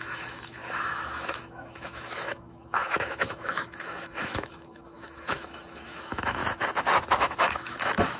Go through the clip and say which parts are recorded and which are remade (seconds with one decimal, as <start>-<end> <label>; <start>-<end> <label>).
0.0-6.4 remade; 6.4-7.2 recorded; 7.2-8.2 remade